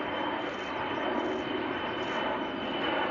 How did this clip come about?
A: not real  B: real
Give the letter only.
B